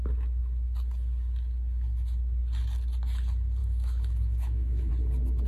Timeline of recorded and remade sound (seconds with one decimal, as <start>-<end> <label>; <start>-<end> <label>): 0.0-3.6 recorded; 3.6-4.9 remade; 4.9-5.5 recorded

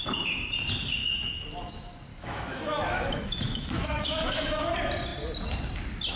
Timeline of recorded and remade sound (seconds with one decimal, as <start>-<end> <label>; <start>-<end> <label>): 0.0-1.0 recorded; 1.0-1.5 remade; 1.5-2.1 recorded; 2.1-4.6 remade; 4.6-6.2 recorded

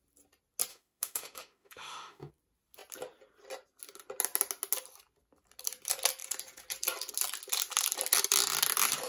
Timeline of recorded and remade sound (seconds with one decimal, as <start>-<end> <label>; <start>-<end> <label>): 0.0-0.7 recorded; 0.7-2.3 remade; 2.3-9.1 recorded

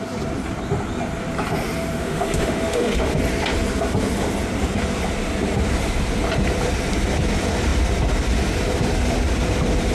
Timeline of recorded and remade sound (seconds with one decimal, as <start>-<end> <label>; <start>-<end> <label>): 0.0-2.0 recorded; 2.0-3.2 remade; 3.2-9.9 recorded

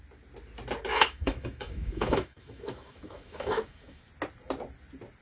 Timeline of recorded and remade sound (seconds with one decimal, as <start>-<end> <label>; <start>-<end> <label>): 0.0-0.9 recorded; 0.9-4.0 remade; 4.0-5.2 recorded